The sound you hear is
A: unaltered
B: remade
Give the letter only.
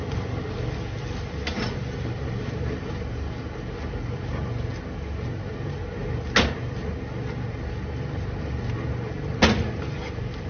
A